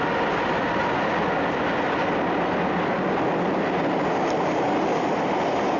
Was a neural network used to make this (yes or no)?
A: no